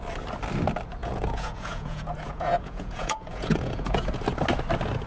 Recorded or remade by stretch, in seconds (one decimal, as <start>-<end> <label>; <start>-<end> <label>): 0.0-1.0 recorded; 1.0-4.1 remade; 4.1-5.1 recorded